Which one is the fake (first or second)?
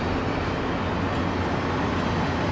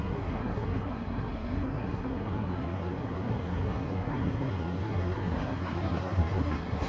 second